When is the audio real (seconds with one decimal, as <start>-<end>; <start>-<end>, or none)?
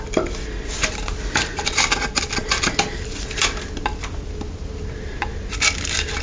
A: 0.0-6.2